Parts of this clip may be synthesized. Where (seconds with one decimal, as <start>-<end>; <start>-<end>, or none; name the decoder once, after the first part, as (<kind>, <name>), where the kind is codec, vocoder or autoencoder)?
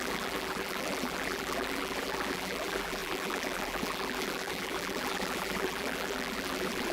0.0-6.9 (vocoder, BigVGAN v2)